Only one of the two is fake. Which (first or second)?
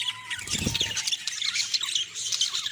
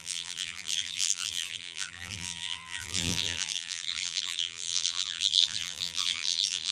second